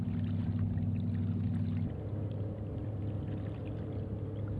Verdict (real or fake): real